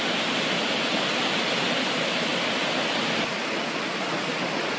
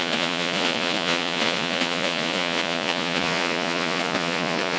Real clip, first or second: first